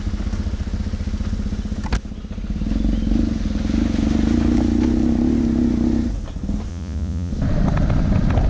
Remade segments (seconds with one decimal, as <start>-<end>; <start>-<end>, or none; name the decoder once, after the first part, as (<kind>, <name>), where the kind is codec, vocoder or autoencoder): 6.7-7.3 (vocoder, Vocos)